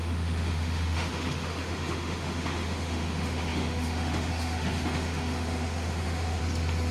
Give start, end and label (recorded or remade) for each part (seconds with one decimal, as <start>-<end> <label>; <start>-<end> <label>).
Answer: 0.0-6.4 remade; 6.4-6.9 recorded